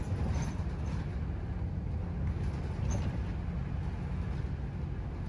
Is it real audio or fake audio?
real